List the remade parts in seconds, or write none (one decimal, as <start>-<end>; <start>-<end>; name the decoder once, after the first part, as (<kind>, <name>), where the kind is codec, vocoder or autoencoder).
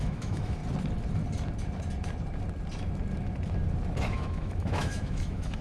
0.0-0.6 (autoencoder, DAC-VAE); 4.0-5.6